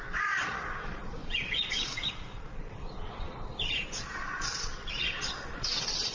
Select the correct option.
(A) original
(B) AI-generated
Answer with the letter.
B